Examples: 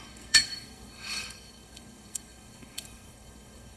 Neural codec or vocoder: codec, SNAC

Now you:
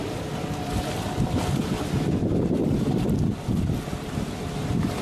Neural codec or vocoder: vocoder, BigVGAN v2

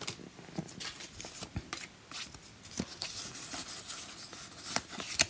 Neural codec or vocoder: none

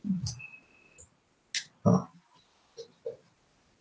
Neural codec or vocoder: none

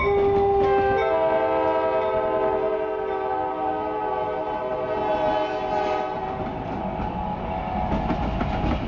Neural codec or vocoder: none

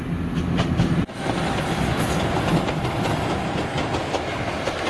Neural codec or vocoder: none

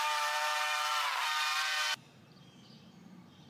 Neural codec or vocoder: vocoder, BigVGAN v2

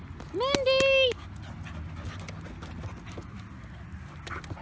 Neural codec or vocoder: none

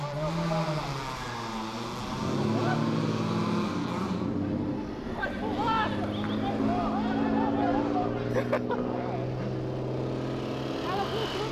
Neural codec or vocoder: none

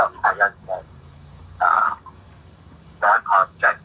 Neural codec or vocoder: codec, DAC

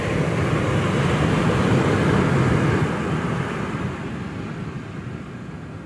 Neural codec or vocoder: none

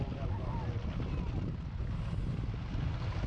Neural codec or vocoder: none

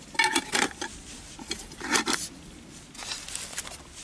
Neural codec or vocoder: none